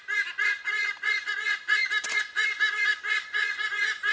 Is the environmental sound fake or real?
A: fake